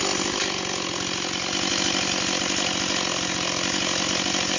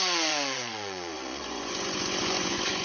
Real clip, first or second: first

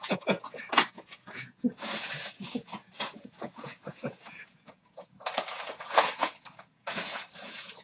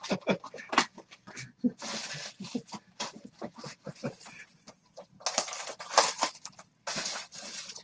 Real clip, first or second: second